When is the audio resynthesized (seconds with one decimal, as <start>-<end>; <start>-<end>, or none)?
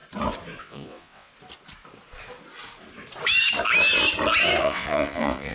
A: 0.6-1.3; 4.6-5.5